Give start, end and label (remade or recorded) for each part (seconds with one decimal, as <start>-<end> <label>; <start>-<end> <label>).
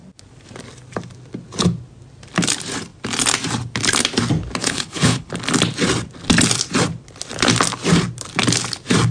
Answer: 0.0-4.6 recorded; 4.6-5.3 remade; 5.3-9.1 recorded